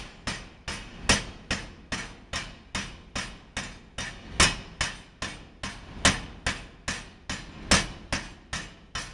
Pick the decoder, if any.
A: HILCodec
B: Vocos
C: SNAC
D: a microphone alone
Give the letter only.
D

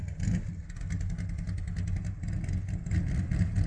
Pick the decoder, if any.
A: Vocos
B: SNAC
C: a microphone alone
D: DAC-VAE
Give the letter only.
C